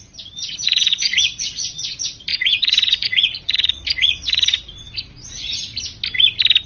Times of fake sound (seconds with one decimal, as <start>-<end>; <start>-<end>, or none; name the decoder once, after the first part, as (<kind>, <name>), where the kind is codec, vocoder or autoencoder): 0.0-5.7 (vocoder, Vocos)